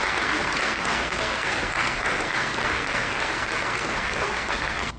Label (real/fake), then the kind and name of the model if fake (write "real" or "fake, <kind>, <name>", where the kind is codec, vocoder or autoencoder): fake, codec, SNAC